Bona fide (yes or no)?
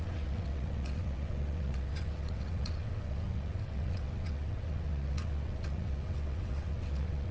no